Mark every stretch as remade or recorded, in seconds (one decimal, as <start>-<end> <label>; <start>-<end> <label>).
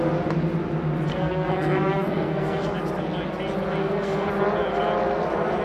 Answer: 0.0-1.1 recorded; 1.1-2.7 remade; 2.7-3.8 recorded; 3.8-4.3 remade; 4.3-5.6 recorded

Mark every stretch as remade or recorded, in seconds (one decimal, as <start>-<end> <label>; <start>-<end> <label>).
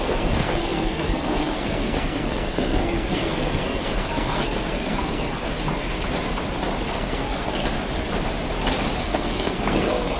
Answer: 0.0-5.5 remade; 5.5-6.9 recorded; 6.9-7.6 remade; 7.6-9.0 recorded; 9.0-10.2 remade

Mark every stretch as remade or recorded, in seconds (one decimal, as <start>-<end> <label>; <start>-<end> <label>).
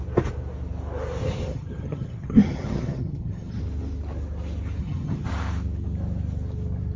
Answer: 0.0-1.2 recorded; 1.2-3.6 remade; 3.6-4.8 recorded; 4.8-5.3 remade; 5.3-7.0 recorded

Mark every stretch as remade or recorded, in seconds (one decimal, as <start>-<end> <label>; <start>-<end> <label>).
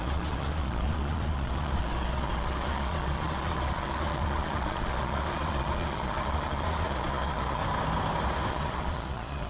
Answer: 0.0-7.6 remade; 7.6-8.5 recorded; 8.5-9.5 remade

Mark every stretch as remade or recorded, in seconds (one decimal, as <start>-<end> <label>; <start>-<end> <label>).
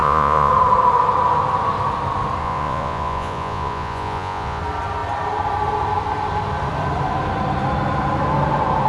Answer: 0.0-0.5 remade; 0.5-2.4 recorded; 2.4-4.6 remade; 4.6-8.9 recorded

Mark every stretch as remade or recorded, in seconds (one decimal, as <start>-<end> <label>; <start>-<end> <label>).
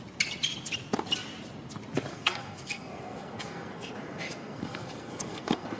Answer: 0.0-2.1 recorded; 2.1-5.8 remade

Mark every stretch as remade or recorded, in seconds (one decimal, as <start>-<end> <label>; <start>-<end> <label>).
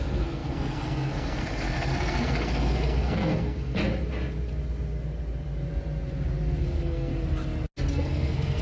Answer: 0.0-3.8 remade; 3.8-6.6 recorded; 6.6-7.1 remade; 7.1-7.9 recorded; 7.9-8.6 remade